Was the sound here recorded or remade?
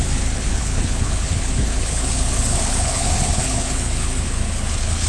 remade